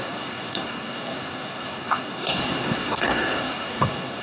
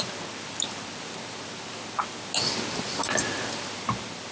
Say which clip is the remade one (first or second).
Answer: first